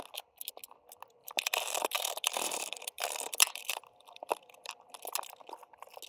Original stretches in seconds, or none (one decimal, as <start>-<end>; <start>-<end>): 0.0-1.2; 4.9-6.1